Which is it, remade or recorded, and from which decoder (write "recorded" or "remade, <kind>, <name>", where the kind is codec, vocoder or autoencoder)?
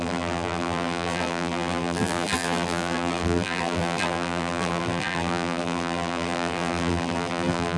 remade, vocoder, BigVGAN v2